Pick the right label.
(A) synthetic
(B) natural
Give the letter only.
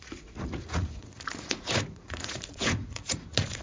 A